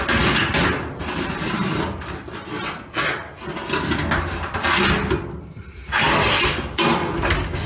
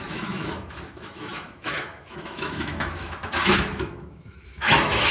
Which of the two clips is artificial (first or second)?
second